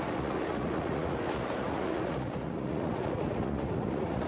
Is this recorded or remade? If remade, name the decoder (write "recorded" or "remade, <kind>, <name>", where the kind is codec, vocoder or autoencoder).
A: remade, vocoder, Vocos